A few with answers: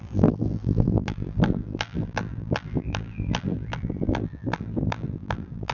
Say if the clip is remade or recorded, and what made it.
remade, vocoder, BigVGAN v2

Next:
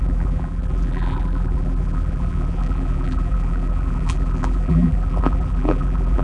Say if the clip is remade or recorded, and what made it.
remade, vocoder, BigVGAN v2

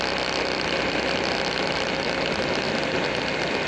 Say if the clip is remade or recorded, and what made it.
recorded